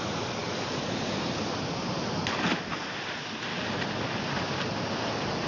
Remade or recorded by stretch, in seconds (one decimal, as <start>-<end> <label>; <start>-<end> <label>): 0.0-5.5 recorded